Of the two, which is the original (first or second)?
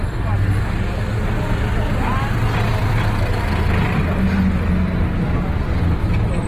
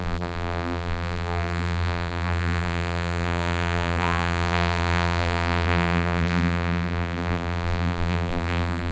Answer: first